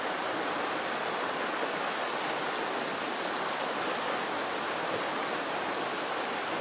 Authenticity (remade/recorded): recorded